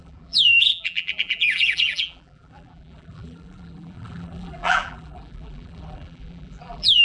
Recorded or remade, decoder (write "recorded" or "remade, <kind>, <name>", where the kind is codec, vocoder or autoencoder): remade, vocoder, BigVGAN v2